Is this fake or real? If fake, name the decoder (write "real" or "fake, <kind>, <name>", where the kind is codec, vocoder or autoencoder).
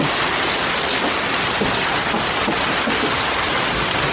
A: real